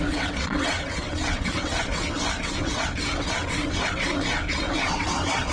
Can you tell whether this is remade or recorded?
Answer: remade